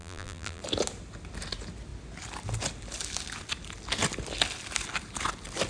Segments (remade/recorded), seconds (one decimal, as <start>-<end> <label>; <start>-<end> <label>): 0.0-0.6 remade; 0.6-5.7 recorded